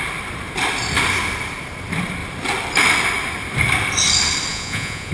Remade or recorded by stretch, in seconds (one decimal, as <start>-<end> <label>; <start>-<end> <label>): 0.0-4.5 recorded; 4.5-5.1 remade